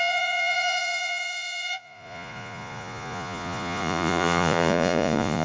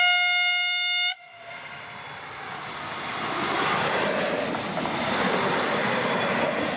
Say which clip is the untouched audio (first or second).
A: second